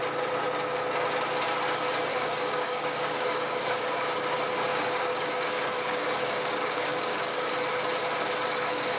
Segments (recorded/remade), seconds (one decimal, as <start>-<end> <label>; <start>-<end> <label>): 0.0-2.1 recorded; 2.1-4.0 remade; 4.0-4.7 recorded; 4.7-7.5 remade; 7.5-9.0 recorded